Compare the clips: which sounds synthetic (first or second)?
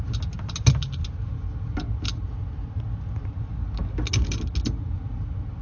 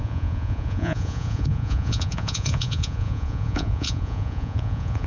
second